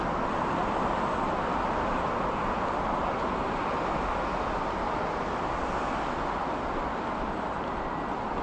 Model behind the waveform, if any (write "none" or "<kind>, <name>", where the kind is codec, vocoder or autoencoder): none